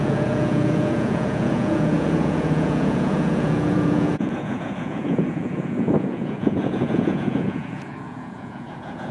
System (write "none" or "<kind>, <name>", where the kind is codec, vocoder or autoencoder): vocoder, Vocos